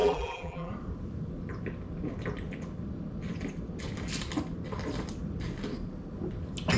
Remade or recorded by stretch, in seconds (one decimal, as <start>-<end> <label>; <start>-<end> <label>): 0.0-0.7 remade; 0.7-6.8 recorded